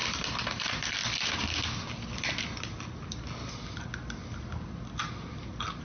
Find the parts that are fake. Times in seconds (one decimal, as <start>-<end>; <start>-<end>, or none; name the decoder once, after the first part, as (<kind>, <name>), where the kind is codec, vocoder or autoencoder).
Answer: none